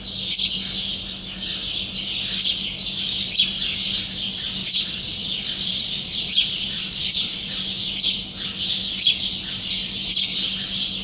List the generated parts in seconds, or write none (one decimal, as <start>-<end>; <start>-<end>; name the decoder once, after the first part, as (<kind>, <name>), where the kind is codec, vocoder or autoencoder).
4.6-7.5 (vocoder, Vocos)